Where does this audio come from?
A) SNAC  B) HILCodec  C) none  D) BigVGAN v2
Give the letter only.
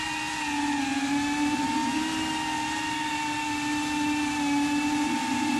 C